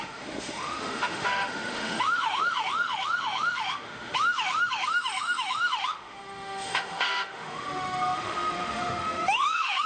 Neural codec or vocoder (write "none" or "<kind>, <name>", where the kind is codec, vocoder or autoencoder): autoencoder, DAC-VAE